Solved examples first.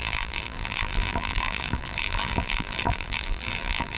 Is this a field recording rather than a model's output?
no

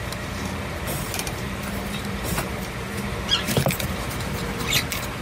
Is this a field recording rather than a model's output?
no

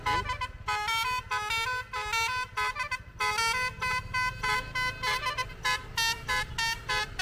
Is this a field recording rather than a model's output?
yes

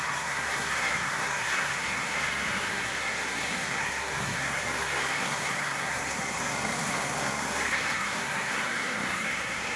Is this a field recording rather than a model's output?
no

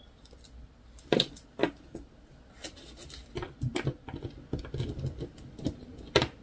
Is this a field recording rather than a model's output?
yes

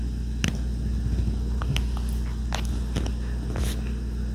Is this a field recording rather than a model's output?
yes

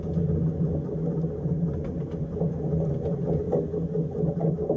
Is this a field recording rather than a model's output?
yes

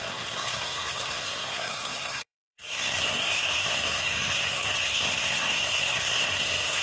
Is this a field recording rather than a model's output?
no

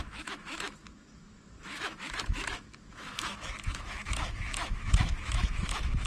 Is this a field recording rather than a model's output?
no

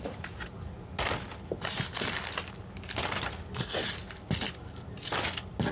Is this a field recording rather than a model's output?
yes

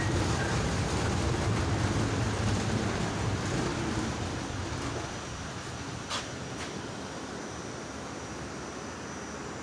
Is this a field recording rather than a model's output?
yes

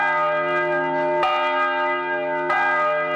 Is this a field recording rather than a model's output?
yes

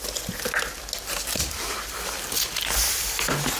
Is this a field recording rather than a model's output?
yes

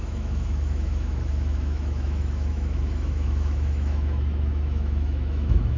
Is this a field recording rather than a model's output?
no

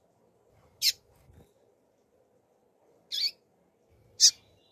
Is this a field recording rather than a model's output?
yes